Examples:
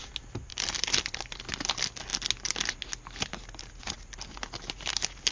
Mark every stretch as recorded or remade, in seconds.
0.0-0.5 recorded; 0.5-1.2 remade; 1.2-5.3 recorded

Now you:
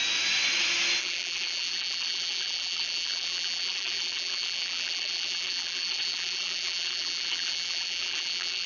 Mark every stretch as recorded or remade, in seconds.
0.0-1.0 recorded; 1.0-8.7 remade

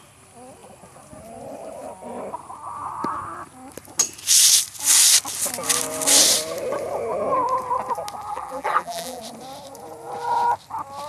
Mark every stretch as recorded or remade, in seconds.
0.0-8.3 recorded; 8.3-9.2 remade; 9.2-11.1 recorded

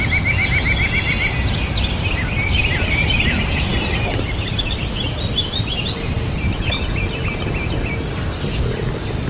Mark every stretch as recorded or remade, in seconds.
0.0-9.3 recorded

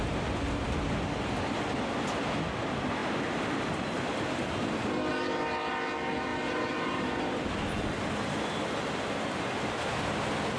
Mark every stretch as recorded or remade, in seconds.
0.0-6.3 recorded; 6.3-7.2 remade; 7.2-10.6 recorded

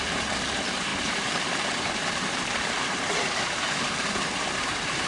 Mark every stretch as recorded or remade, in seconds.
0.0-5.1 remade

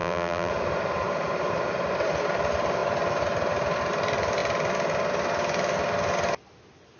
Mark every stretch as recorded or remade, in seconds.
0.0-0.5 remade; 0.5-7.0 recorded

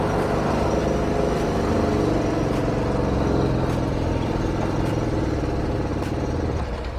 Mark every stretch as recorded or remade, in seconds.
0.0-7.0 recorded